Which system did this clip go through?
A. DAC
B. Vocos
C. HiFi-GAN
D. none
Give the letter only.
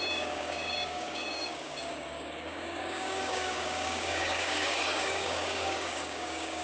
A